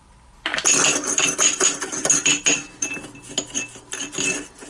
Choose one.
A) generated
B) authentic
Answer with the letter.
B